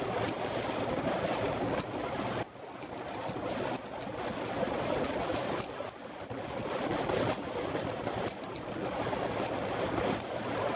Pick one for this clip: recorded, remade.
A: recorded